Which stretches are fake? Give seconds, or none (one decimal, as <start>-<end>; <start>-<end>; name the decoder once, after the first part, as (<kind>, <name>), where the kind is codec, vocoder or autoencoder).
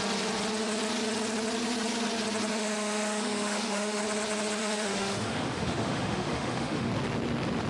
2.5-4.0 (autoencoder, DAC-VAE); 4.6-6.9